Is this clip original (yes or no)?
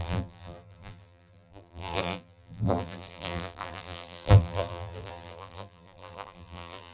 no